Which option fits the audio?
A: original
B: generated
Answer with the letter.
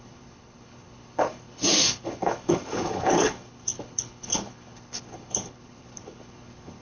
B